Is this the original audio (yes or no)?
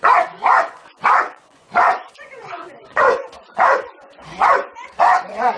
no